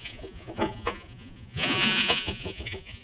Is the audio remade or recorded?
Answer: remade